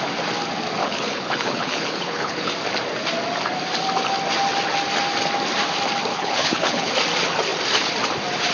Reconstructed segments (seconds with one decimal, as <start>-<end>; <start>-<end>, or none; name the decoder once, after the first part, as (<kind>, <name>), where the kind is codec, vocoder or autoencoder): 0.8-2.5 (codec, HILCodec); 6.1-6.9